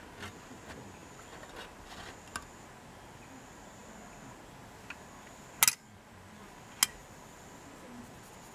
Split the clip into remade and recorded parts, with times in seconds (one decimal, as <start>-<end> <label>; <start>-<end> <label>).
0.0-7.0 recorded; 7.0-7.6 remade; 7.6-8.5 recorded